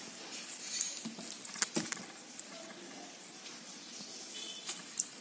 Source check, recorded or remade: recorded